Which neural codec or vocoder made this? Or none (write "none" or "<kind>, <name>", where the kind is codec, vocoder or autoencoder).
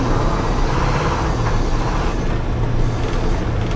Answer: none